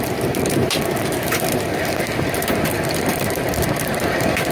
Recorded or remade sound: remade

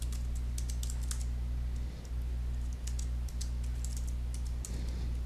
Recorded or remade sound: recorded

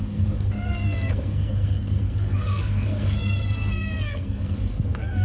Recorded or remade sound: remade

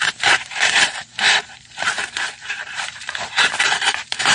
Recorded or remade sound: remade